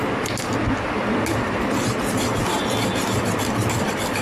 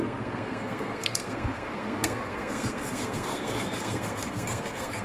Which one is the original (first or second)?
first